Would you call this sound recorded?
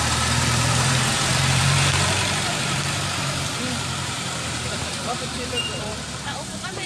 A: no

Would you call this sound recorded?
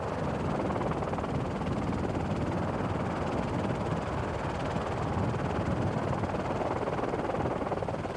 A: yes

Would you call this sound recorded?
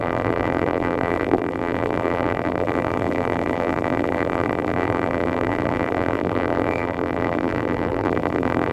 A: no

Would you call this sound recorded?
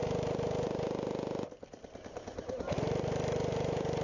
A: yes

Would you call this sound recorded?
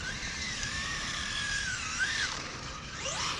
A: no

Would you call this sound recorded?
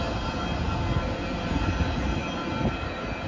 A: yes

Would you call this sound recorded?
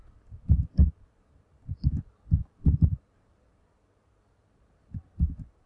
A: no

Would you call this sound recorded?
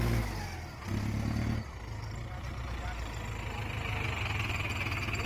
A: yes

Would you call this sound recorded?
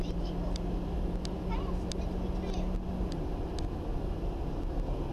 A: yes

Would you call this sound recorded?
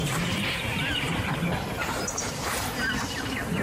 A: no